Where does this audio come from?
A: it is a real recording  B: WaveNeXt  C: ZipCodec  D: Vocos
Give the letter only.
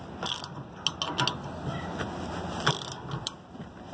A